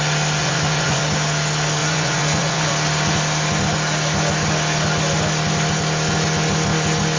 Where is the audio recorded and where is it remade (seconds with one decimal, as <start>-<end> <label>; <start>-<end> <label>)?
0.0-0.4 recorded; 0.4-1.0 remade; 1.0-1.8 recorded; 1.8-2.7 remade; 2.7-7.2 recorded